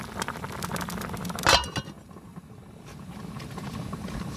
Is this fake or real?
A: real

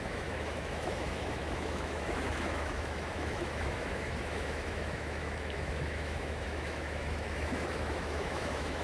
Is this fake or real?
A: fake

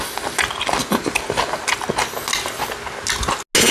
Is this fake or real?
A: real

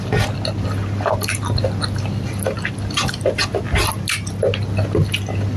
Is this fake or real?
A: real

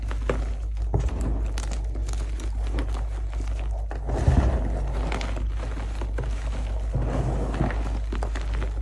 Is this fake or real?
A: real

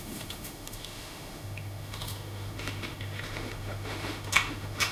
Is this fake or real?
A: fake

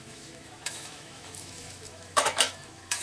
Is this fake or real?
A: fake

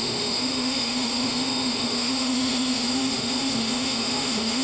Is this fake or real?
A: fake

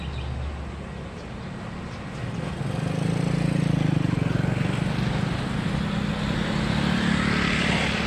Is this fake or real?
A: real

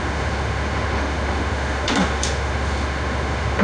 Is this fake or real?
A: fake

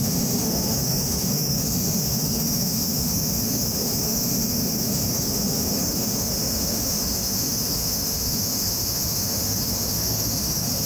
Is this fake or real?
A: fake